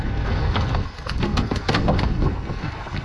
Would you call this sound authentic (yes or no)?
no